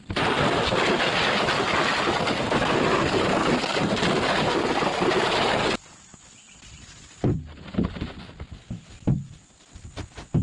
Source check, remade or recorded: recorded